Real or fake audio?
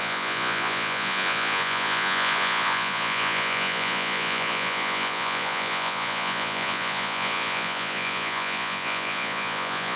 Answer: fake